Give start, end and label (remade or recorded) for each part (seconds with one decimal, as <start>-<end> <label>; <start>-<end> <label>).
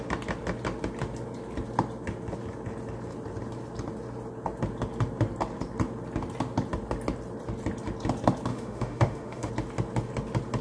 0.0-8.5 recorded; 8.5-9.5 remade; 9.5-10.6 recorded